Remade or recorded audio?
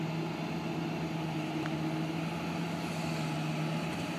recorded